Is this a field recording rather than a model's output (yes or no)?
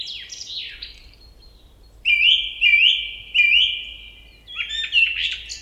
yes